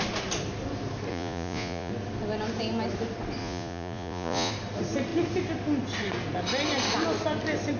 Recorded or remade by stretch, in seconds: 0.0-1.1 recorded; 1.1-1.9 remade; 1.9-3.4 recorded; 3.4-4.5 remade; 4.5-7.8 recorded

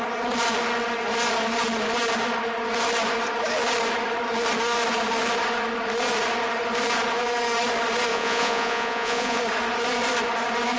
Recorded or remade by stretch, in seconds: 0.0-8.1 recorded; 8.1-9.4 remade; 9.4-10.8 recorded

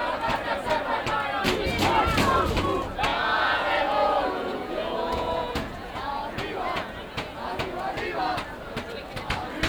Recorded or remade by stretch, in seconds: 0.0-3.1 recorded; 3.1-7.8 remade; 7.8-9.7 recorded

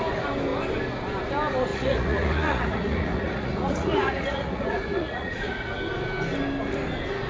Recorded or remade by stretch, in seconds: 0.0-1.7 recorded; 1.7-5.7 remade; 5.7-7.3 recorded

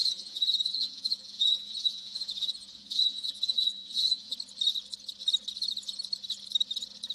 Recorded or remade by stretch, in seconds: 0.0-4.3 remade; 4.3-7.1 recorded

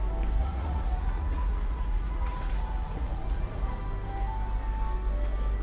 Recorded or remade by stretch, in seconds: 0.0-0.4 recorded; 0.4-3.8 remade; 3.8-5.6 recorded